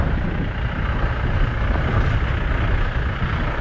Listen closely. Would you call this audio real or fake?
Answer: real